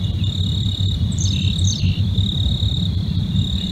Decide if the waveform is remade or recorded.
remade